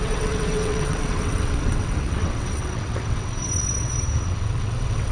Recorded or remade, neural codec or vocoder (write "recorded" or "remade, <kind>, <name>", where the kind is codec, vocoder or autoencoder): remade, vocoder, WaveNeXt